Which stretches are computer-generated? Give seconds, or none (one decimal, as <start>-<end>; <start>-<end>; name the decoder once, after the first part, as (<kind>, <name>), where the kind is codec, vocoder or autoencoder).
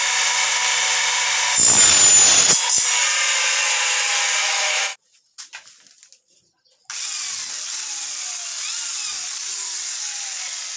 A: 4.4-5.0 (autoencoder, DAC-VAE)